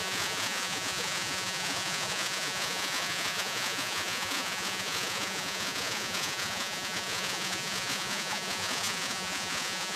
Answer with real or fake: fake